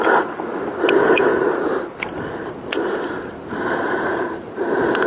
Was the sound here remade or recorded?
recorded